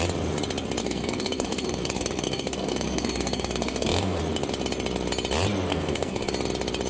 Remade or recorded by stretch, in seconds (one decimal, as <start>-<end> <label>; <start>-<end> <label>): 0.0-0.8 recorded; 0.8-4.2 remade; 4.2-5.7 recorded; 5.7-6.3 remade; 6.3-6.9 recorded